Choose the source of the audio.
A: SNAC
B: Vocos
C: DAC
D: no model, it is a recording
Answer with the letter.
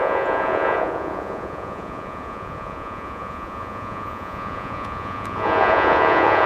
B